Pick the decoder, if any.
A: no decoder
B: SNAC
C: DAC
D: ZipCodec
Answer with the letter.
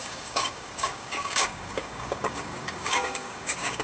C